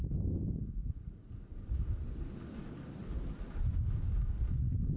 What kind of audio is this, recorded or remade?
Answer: recorded